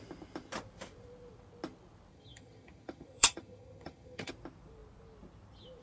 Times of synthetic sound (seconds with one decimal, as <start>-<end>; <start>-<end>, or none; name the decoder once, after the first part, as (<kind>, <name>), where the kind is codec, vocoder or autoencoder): 2.1-4.3 (vocoder, HiFi-GAN)